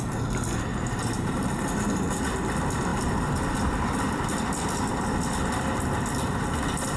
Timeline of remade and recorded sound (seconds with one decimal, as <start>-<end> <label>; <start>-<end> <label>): 0.0-0.7 recorded; 0.7-1.4 remade; 1.4-7.0 recorded